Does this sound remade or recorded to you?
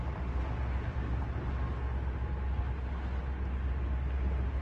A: recorded